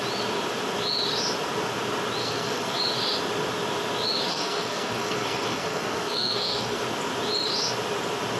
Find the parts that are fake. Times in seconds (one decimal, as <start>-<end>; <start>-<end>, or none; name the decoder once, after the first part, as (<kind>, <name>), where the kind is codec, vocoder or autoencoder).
2.2-2.8 (codec, SNAC); 4.3-6.8